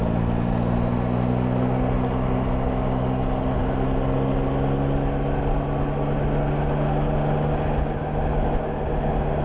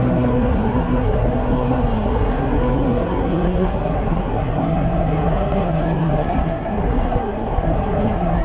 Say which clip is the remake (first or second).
second